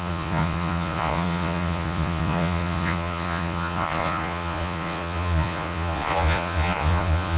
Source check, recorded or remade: remade